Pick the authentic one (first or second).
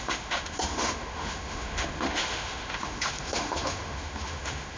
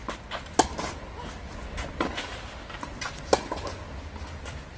second